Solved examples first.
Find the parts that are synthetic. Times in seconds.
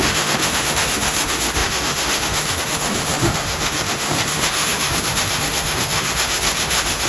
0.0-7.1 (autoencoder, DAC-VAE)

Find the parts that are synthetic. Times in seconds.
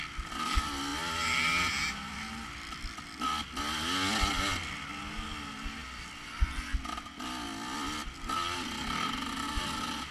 none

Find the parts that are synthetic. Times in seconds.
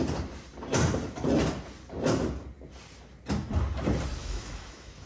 4.2-5.1 (autoencoder, DAC-VAE)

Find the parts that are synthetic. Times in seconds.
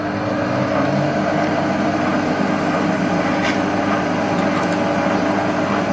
none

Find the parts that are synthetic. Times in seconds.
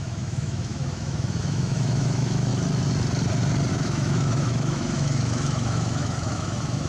0.0-2.5 (autoencoder, DAC-VAE); 3.7-6.9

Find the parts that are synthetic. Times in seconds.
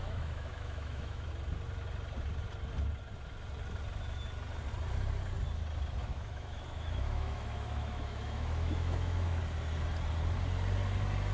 0.0-1.3 (autoencoder, DAC-VAE); 6.0-9.4